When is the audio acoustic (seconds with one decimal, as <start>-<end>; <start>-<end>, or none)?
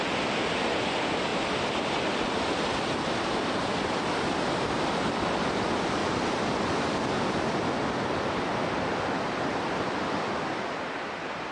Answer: 0.0-1.3; 4.8-6.0; 6.6-11.5